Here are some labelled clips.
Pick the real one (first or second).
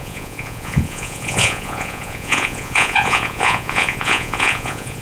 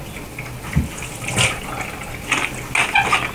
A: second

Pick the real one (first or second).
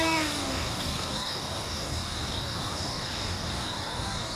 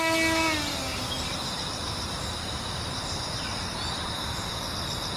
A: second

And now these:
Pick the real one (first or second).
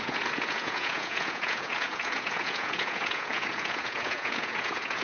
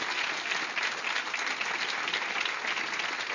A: second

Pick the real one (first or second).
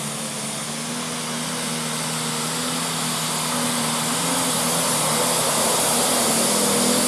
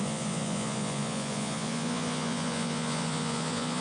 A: first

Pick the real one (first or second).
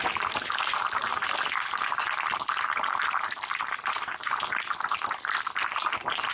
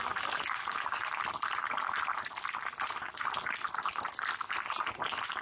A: second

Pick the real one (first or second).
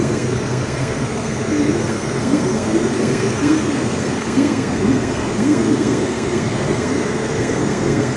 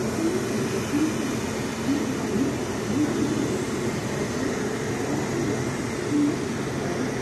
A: second